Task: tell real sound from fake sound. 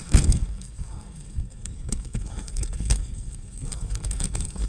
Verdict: fake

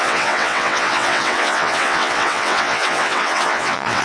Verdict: fake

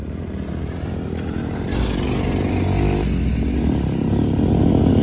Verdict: real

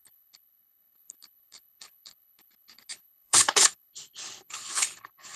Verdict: fake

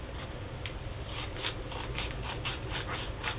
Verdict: real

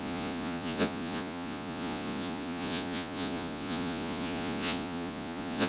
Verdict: fake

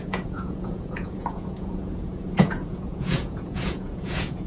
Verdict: fake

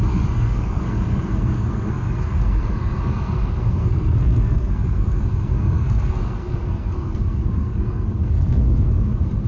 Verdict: fake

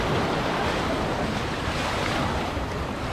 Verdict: real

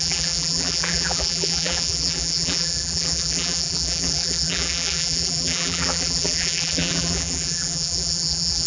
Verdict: fake